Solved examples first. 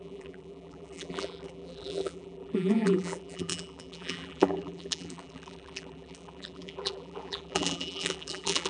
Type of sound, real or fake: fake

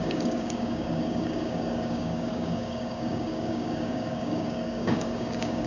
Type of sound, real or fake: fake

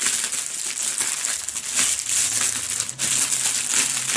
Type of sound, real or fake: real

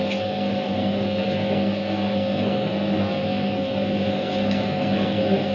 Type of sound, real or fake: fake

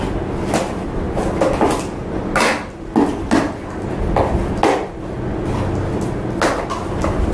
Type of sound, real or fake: real